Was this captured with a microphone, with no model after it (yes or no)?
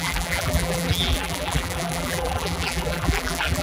no